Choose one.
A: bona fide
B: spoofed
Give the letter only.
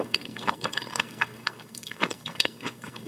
B